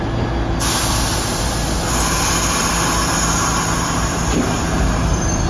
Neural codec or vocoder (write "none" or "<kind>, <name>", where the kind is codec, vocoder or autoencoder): none